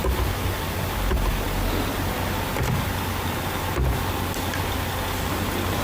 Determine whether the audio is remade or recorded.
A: recorded